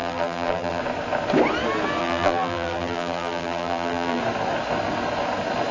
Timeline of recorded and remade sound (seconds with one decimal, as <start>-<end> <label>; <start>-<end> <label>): 0.0-0.8 remade; 0.8-2.0 recorded; 2.0-4.2 remade; 4.2-5.7 recorded